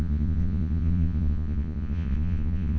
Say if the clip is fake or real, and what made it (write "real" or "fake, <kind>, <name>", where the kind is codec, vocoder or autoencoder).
fake, vocoder, Vocos